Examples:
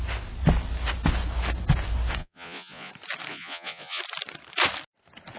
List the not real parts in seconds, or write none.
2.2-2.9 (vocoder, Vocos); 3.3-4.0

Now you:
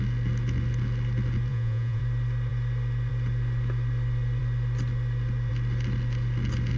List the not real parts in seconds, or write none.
1.5-2.0 (vocoder, Vocos)

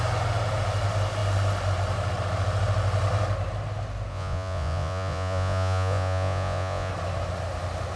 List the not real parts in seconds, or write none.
4.1-6.9 (vocoder, Vocos)

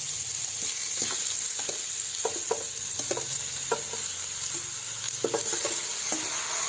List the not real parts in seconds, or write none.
none

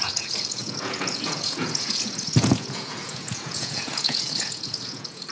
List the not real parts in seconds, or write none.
0.0-5.3 (vocoder, Vocos)

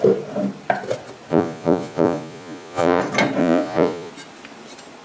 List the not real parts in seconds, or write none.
1.3-3.0 (vocoder, Vocos); 3.4-4.1

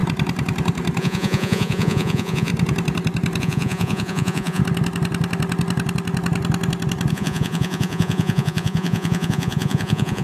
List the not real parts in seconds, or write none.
1.0-2.5 (vocoder, Vocos); 3.4-4.6; 7.1-10.2

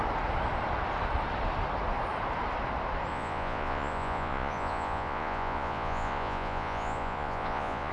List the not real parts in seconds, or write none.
3.1-7.9 (vocoder, Vocos)